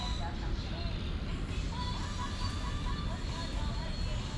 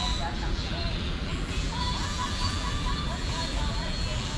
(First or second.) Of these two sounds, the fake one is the second